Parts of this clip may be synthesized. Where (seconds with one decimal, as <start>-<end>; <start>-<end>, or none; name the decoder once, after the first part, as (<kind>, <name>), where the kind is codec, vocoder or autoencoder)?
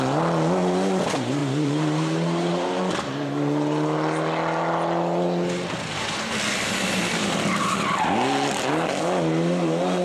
1.4-2.8 (vocoder, BigVGAN v2)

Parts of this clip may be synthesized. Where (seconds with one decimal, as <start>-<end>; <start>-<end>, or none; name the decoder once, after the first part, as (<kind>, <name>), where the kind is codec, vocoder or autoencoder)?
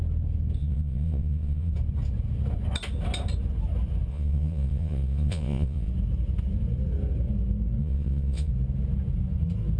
0.6-1.7 (vocoder, Vocos); 4.1-5.9; 7.8-8.5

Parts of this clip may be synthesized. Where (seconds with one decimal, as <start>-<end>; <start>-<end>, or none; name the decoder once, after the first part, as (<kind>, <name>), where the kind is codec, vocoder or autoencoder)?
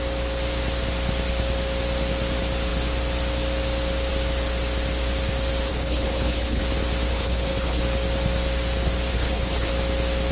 5.7-6.6 (codec, HILCodec); 7.1-7.8; 9.1-9.7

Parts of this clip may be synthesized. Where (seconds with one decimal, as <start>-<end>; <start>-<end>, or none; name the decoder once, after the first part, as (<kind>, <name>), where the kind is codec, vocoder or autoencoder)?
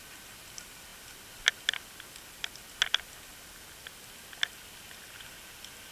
none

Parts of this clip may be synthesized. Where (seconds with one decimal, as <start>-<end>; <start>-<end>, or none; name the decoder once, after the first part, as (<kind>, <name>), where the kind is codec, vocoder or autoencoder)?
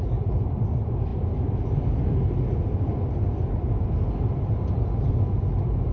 none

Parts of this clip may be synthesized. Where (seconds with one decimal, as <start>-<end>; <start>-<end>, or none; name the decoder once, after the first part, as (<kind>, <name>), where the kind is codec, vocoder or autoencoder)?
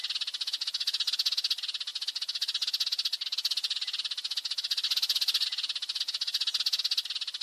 none